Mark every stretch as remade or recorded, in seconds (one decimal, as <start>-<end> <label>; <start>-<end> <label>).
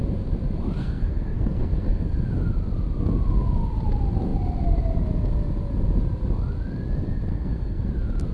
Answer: 0.0-0.8 recorded; 0.8-2.0 remade; 2.0-7.3 recorded; 7.3-7.9 remade; 7.9-8.3 recorded